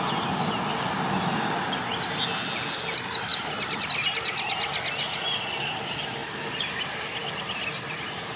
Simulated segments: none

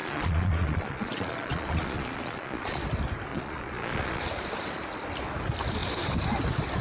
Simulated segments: 0.0-2.8 (vocoder, Vocos); 3.3-4.3

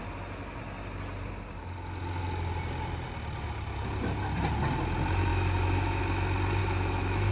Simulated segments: 5.3-6.0 (autoencoder, DAC-VAE); 6.6-7.3